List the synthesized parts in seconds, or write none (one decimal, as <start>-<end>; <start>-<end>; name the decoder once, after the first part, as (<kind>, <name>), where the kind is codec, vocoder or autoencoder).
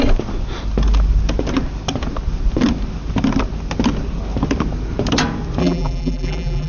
5.6-6.7 (vocoder, BigVGAN v2)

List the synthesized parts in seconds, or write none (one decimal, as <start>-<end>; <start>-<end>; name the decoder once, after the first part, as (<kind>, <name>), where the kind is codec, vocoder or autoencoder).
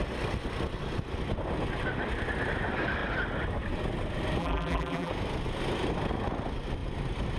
4.4-5.1 (vocoder, BigVGAN v2)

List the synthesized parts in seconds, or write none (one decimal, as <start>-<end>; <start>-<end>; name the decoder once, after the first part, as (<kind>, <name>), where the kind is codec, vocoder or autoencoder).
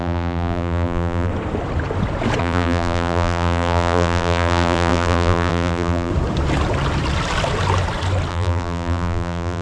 0.0-1.3 (vocoder, BigVGAN v2); 2.4-6.1; 8.3-9.6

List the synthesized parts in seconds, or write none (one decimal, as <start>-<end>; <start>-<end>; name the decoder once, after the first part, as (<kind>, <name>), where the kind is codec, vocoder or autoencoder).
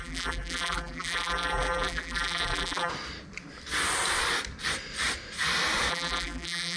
0.0-2.9 (vocoder, BigVGAN v2); 5.9-6.8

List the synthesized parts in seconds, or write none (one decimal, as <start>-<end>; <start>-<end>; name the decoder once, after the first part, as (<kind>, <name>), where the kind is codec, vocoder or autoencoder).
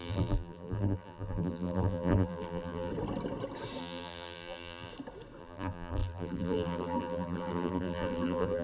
0.0-2.9 (vocoder, BigVGAN v2); 3.8-4.9; 5.4-8.6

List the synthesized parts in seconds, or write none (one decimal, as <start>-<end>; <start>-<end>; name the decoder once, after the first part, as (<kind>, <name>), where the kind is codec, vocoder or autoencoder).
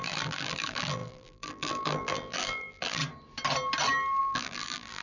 0.0-3.0 (vocoder, BigVGAN v2); 4.2-5.0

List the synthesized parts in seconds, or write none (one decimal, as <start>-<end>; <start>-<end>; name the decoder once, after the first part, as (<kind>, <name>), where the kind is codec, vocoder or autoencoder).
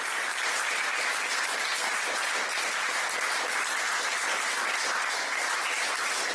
none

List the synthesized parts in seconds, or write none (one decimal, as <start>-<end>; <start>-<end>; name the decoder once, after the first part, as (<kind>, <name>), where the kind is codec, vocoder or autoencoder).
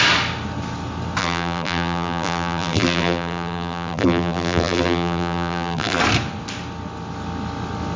1.2-6.0 (vocoder, BigVGAN v2)